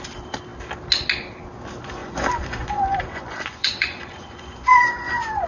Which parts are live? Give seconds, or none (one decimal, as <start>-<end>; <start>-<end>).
0.0-2.0